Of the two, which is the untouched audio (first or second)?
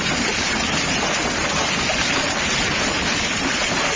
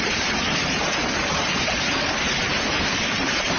first